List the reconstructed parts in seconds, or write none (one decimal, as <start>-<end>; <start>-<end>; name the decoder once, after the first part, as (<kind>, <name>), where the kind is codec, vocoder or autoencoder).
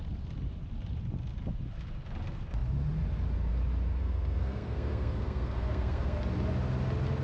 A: 4.0-6.2 (codec, SNAC)